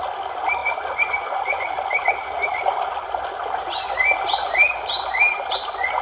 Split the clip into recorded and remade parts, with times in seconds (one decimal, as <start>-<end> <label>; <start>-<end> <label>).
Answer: 0.0-6.0 recorded